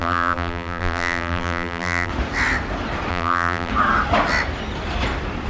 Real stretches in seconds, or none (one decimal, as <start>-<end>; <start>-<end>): 2.1-3.1; 3.7-5.5